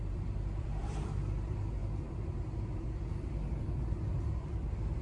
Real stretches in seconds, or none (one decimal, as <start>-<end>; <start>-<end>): 1.8-5.0